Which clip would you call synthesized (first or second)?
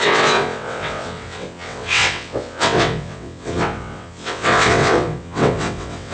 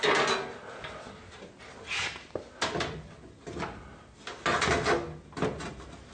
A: first